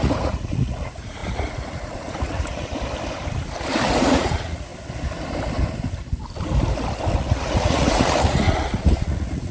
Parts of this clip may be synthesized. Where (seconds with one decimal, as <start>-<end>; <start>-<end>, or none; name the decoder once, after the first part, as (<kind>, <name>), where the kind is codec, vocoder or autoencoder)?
0.0-2.7 (vocoder, Vocos); 4.0-4.7; 7.2-9.5